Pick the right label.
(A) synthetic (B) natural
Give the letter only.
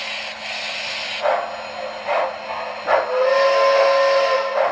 B